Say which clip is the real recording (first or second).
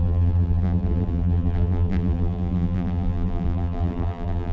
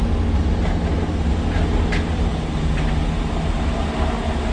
second